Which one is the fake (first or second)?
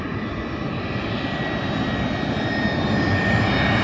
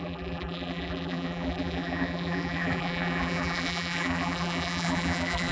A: second